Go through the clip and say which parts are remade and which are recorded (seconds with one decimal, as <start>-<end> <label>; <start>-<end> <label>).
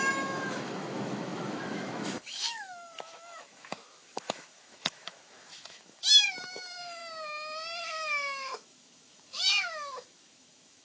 0.0-7.0 remade; 7.0-7.8 recorded; 7.8-10.8 remade